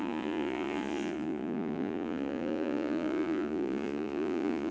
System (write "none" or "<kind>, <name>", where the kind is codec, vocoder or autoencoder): vocoder, Vocos